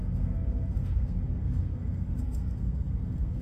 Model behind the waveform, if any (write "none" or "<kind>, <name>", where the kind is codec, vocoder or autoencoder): codec, SNAC